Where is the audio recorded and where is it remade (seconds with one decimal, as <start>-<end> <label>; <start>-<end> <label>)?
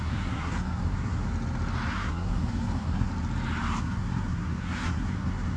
0.0-1.3 remade; 1.3-1.9 recorded; 1.9-3.1 remade; 3.1-3.8 recorded; 3.8-5.6 remade